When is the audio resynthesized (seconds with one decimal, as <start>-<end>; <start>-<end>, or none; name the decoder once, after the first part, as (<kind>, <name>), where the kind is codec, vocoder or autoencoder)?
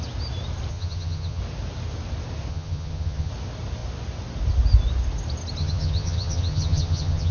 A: 0.7-1.4 (vocoder, HiFi-GAN); 2.5-3.3; 5.6-7.3